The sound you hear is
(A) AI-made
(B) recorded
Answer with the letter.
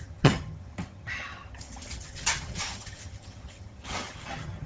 A